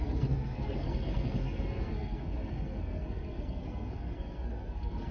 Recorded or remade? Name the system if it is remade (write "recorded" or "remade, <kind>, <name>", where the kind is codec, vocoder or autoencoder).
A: remade, codec, SNAC